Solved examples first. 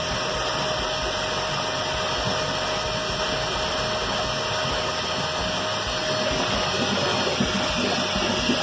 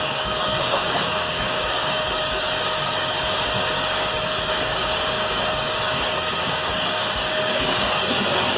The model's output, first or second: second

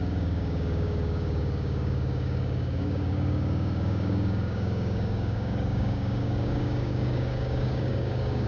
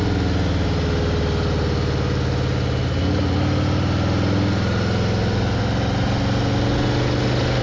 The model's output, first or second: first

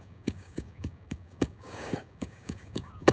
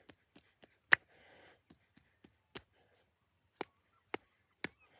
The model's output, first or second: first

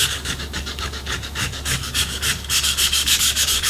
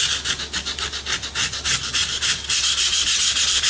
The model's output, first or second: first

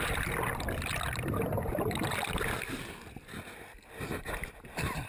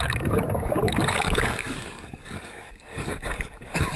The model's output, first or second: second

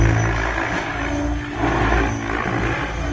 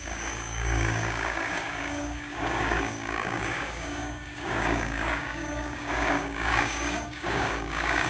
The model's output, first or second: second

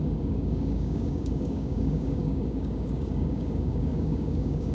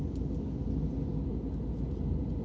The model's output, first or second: first